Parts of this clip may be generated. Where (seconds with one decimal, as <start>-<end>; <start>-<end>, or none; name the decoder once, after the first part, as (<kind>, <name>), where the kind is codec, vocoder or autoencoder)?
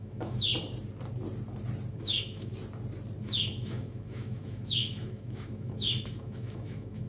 0.0-0.5 (autoencoder, DAC-VAE); 1.9-2.5; 3.2-7.1